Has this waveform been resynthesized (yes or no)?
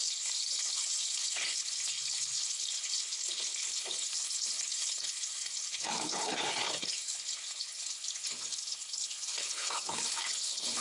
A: yes